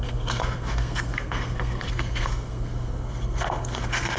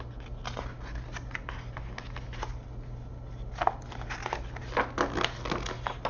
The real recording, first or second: second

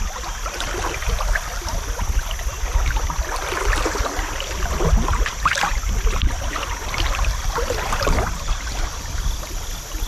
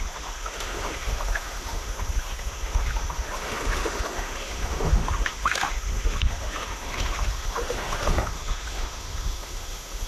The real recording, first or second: first